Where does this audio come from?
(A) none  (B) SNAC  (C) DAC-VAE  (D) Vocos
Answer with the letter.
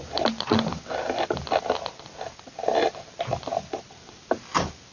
A